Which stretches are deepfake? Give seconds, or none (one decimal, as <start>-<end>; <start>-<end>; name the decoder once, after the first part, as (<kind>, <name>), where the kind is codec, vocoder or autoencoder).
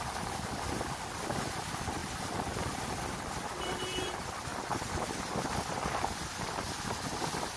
none